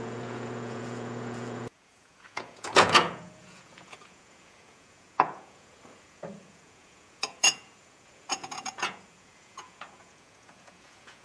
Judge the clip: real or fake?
fake